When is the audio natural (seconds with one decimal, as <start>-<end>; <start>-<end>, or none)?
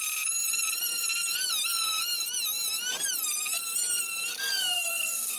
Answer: 0.0-4.3